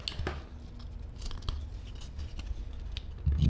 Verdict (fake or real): real